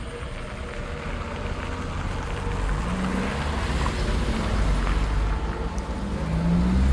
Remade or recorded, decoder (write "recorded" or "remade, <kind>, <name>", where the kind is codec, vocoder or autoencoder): recorded